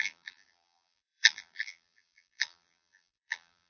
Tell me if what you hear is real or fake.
fake